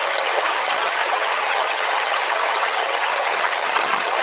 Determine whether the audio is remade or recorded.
remade